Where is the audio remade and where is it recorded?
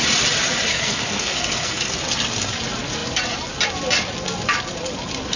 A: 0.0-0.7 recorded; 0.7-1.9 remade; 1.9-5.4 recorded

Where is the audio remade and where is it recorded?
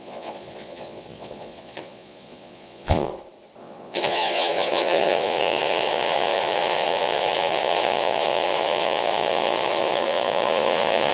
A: 0.0-3.1 remade; 3.1-3.6 recorded; 3.6-11.1 remade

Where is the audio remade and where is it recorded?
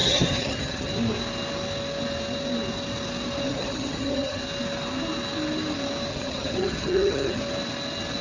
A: 0.0-0.9 remade; 0.9-3.5 recorded; 3.5-4.4 remade; 4.4-6.1 recorded; 6.1-7.4 remade; 7.4-8.2 recorded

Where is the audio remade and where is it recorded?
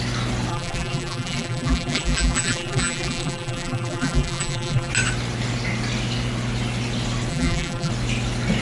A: 0.0-0.5 recorded; 0.5-4.9 remade; 4.9-7.3 recorded; 7.3-7.9 remade; 7.9-8.6 recorded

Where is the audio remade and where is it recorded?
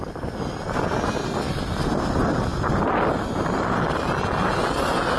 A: 0.0-5.2 recorded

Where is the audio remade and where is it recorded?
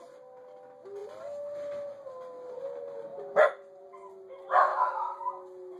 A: 0.0-4.7 recorded; 4.7-5.2 remade; 5.2-5.8 recorded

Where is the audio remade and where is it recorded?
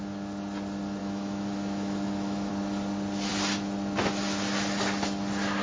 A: 0.0-1.0 recorded; 1.0-2.5 remade; 2.5-5.6 recorded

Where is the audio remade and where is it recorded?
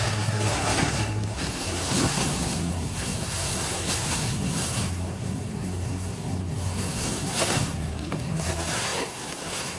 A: 0.0-9.8 remade